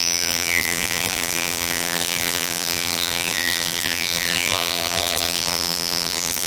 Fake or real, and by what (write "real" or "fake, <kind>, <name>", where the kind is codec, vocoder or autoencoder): fake, vocoder, BigVGAN v2